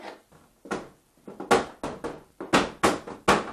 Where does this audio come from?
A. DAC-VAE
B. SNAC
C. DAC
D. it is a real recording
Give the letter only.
D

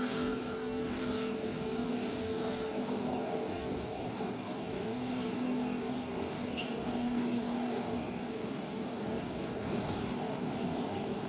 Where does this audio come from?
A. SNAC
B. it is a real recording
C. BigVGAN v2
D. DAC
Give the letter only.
D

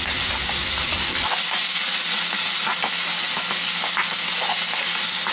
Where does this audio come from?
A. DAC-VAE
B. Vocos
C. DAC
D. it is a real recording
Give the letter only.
D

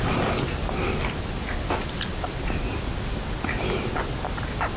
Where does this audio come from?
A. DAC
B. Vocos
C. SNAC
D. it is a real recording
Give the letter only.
D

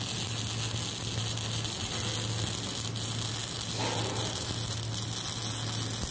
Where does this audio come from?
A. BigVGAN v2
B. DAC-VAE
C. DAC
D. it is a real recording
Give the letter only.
D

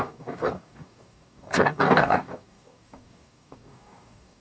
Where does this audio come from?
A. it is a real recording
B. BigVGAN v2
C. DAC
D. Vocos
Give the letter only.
C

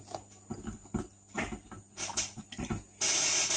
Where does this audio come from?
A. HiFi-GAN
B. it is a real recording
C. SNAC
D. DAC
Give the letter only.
B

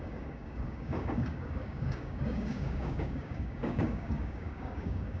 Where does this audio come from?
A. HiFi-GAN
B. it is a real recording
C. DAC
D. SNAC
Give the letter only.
C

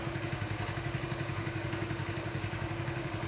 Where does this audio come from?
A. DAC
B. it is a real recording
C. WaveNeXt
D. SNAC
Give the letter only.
A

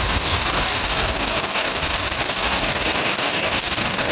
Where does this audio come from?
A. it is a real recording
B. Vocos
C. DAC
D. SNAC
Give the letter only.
C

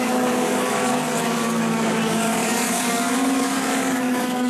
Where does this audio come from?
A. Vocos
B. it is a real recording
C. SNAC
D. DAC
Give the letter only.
D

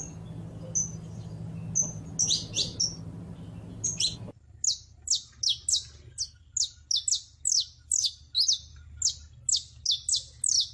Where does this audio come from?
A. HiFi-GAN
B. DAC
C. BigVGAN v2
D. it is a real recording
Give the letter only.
D